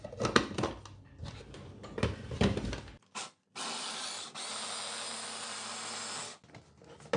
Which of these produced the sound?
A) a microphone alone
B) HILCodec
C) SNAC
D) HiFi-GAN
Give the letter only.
A